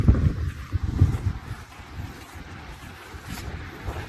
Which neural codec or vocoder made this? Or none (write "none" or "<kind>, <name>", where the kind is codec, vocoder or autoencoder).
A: none